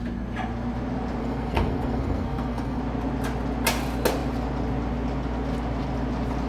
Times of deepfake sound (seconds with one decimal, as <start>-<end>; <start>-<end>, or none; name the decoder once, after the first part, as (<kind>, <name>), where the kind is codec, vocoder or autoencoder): 1.2-2.8 (codec, SNAC)